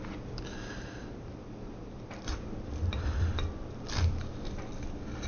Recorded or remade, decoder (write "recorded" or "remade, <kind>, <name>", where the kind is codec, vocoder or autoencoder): remade, vocoder, BigVGAN v2